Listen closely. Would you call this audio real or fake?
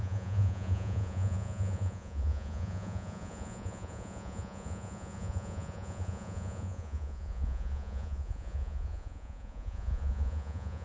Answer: fake